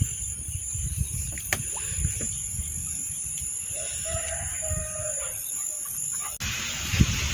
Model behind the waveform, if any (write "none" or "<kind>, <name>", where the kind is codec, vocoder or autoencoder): none